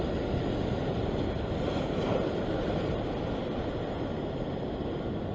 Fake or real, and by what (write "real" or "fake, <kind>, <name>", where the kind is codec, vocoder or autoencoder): real